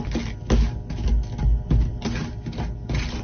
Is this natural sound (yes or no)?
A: yes